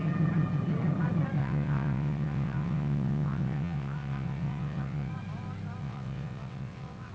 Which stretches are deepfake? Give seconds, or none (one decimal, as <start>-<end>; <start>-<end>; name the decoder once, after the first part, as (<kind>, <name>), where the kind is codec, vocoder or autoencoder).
1.4-5.1 (vocoder, WaveNeXt); 5.8-7.1